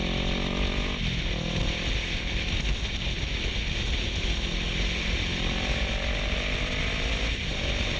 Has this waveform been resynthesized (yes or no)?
no